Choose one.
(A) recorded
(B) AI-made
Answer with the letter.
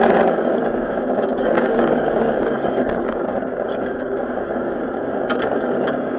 B